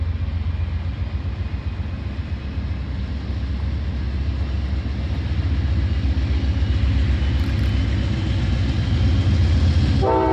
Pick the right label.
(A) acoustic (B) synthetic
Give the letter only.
A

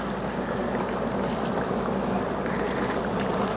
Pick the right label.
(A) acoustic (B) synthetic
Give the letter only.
A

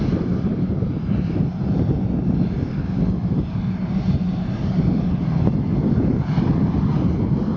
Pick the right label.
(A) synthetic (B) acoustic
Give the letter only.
B